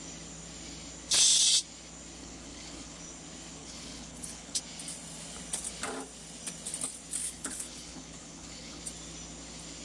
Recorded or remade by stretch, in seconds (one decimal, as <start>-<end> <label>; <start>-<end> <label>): 0.0-2.2 recorded; 2.2-3.0 remade; 3.0-3.6 recorded; 3.6-4.6 remade; 4.6-7.2 recorded; 7.2-8.8 remade; 8.8-9.8 recorded